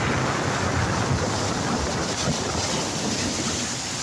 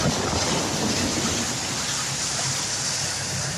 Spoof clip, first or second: first